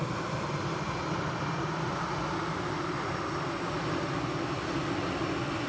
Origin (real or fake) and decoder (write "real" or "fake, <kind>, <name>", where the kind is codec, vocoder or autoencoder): real